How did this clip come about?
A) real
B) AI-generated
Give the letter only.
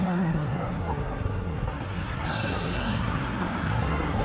B